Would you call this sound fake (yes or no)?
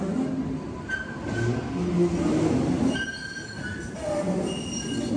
no